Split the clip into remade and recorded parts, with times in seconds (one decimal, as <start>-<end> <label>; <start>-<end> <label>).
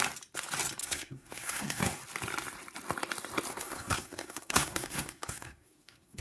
0.0-0.8 recorded; 0.8-2.0 remade; 2.0-3.5 recorded; 3.5-6.2 remade